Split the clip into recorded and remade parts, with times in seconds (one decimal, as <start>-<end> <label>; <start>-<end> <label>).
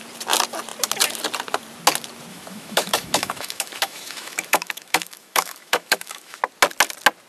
0.0-2.3 recorded; 2.3-6.4 remade; 6.4-7.3 recorded